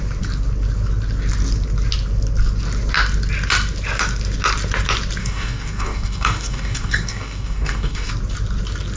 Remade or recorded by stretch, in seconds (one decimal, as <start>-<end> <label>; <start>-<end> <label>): 0.0-5.2 recorded; 5.2-8.1 remade; 8.1-9.0 recorded